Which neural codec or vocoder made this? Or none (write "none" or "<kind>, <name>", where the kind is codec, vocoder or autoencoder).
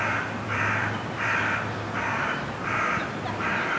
vocoder, BigVGAN v2